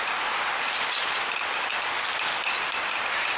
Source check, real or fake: real